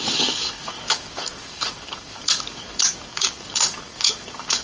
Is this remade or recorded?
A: remade